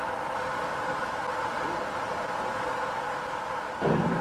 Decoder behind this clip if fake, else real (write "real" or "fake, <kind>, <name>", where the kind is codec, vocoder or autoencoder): real